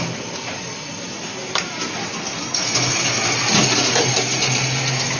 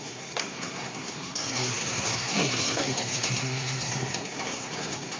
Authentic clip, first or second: first